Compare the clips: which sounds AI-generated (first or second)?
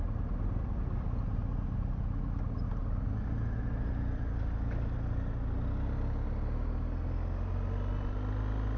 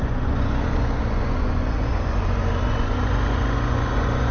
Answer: second